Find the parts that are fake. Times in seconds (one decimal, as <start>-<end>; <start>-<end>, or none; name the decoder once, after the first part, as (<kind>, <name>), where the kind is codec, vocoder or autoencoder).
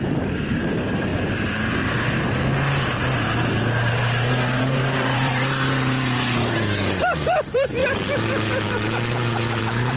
0.0-1.1 (vocoder, BigVGAN v2); 3.7-7.8; 9.6-10.0